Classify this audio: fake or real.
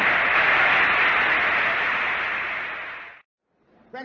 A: real